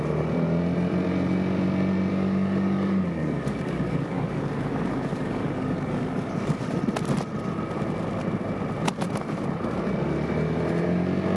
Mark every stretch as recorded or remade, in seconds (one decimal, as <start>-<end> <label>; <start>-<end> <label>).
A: 0.0-2.1 recorded; 2.1-6.6 remade; 6.6-11.4 recorded